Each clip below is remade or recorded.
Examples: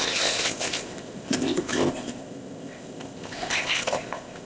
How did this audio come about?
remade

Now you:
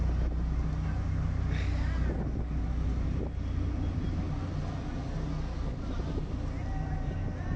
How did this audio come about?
recorded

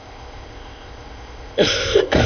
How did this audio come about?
remade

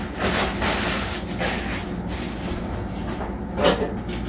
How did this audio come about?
recorded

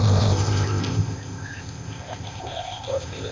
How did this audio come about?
remade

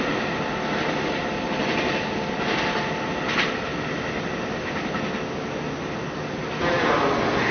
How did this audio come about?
recorded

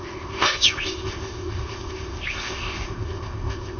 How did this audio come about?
remade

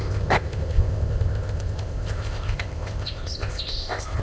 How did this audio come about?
remade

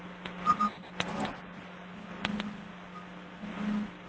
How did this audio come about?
recorded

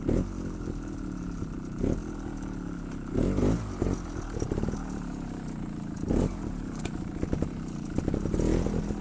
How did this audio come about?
recorded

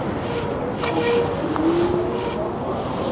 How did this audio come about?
recorded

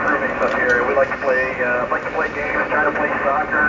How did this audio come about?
recorded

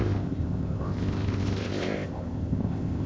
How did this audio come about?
remade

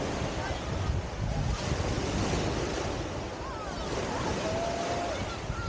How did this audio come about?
recorded